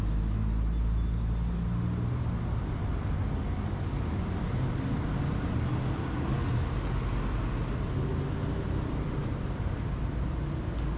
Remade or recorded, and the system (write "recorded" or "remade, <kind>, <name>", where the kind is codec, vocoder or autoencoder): recorded